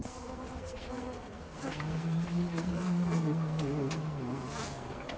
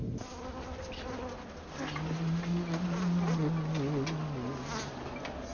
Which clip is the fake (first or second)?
first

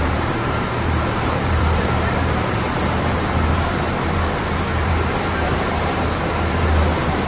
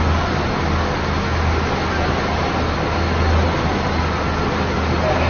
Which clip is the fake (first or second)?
first